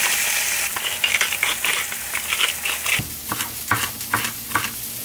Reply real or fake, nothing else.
real